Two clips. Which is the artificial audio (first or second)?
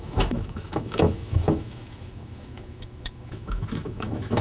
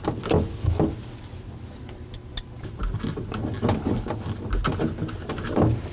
first